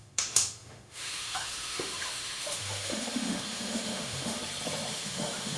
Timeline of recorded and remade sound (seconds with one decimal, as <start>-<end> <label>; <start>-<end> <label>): 0.0-4.4 remade; 4.4-4.9 recorded; 4.9-5.6 remade